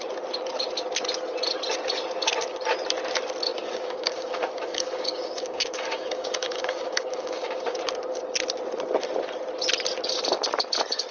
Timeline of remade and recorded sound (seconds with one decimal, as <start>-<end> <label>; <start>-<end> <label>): 0.0-3.5 recorded; 3.5-7.8 remade; 7.8-11.1 recorded

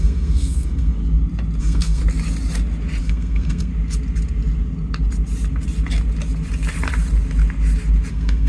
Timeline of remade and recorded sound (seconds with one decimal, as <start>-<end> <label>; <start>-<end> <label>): 0.0-1.0 remade; 1.0-1.6 recorded; 1.6-2.0 remade; 2.0-3.0 recorded; 3.0-3.7 remade; 3.7-8.1 recorded; 8.1-8.5 remade

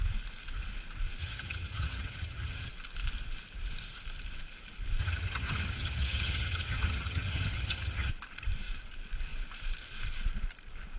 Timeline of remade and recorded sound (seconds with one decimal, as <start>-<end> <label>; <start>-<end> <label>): 0.0-1.2 recorded; 1.2-2.7 remade; 2.7-5.0 recorded; 5.0-8.1 remade; 8.1-11.0 recorded

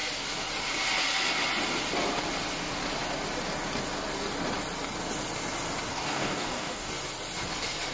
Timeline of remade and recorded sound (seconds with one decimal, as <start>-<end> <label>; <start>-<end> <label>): 0.0-5.9 recorded; 5.9-6.9 remade; 6.9-7.9 recorded